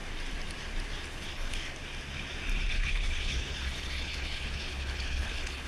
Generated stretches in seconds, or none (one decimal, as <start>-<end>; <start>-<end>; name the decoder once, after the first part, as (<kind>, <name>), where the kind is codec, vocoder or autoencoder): 1.1-1.7 (codec, HILCodec); 2.7-5.7